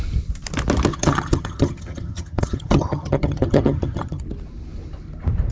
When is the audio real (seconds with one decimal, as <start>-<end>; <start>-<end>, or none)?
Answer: 0.0-0.9; 4.2-5.5